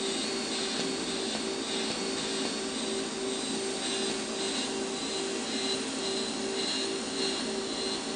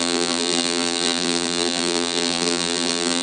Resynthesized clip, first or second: second